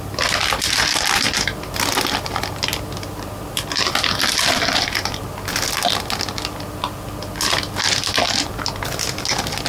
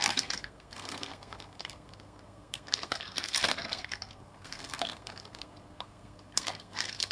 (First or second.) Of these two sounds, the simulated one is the second